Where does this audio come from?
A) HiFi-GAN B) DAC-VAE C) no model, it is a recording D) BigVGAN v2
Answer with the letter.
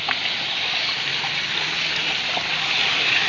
C